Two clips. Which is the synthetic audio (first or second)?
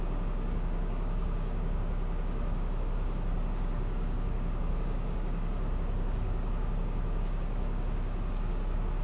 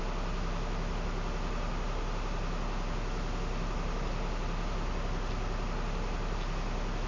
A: first